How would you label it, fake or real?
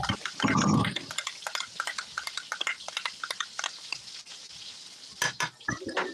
real